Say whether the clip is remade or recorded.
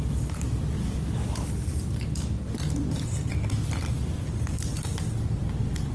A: recorded